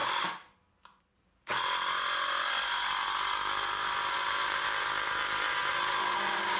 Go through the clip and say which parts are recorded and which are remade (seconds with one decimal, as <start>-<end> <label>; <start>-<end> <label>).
0.0-3.6 recorded; 3.6-6.6 remade